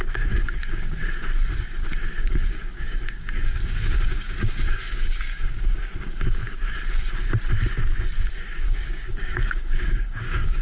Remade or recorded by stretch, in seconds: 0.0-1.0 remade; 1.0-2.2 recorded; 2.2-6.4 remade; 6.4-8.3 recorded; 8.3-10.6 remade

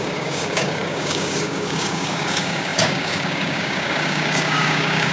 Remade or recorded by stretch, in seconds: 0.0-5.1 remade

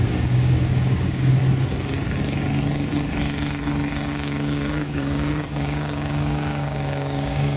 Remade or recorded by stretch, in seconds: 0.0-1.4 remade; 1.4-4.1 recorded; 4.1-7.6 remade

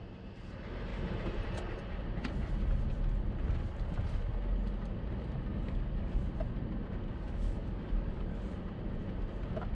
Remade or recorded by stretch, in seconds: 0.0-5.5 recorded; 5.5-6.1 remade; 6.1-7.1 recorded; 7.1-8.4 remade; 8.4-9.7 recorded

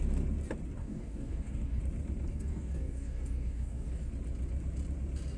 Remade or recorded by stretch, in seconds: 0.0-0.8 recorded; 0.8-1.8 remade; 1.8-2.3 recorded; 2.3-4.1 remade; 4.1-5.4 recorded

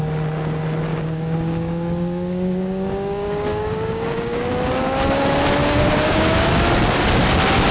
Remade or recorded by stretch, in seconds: 0.0-0.9 recorded; 0.9-4.5 remade; 4.5-5.6 recorded; 5.6-6.5 remade; 6.5-7.7 recorded

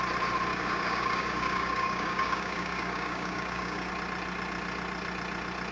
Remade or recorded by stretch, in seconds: 0.0-0.5 recorded; 0.5-3.9 remade; 3.9-5.7 recorded